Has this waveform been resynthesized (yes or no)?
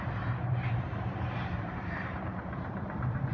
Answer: yes